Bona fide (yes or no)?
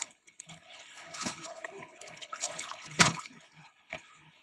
no